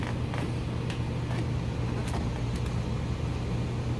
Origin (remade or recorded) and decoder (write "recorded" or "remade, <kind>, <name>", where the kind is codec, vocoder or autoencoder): recorded